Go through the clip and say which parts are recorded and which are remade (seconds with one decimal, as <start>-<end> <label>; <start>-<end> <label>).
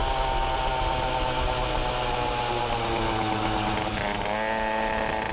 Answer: 0.0-5.3 recorded